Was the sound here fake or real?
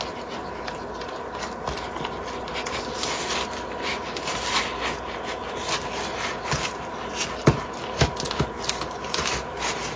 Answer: real